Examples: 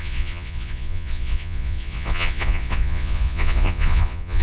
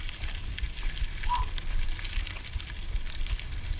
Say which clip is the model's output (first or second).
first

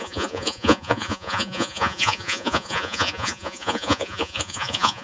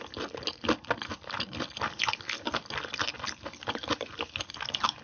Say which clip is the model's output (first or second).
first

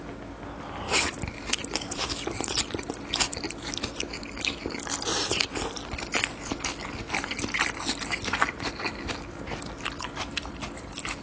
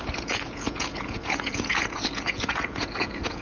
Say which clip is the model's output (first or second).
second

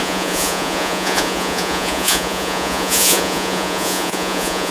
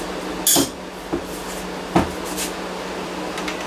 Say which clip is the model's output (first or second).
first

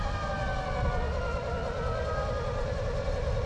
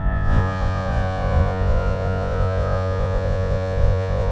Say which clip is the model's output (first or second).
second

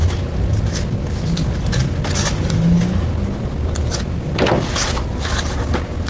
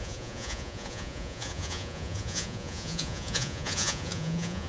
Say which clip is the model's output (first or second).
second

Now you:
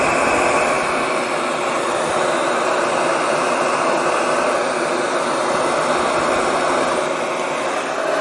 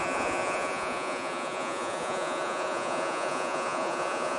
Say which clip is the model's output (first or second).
second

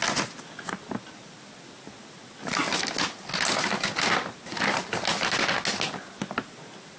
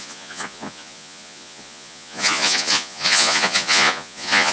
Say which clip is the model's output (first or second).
second